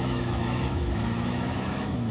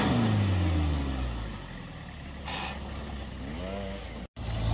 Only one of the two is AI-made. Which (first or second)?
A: first